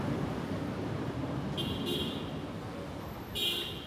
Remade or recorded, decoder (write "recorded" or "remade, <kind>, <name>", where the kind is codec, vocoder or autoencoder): recorded